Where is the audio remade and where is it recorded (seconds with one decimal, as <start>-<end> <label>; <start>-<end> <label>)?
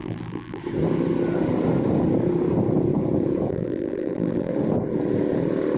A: 0.0-0.6 remade; 0.6-3.5 recorded; 3.5-4.5 remade; 4.5-5.8 recorded